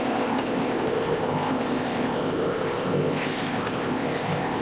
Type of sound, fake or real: fake